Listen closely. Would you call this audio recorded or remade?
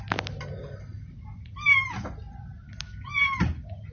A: recorded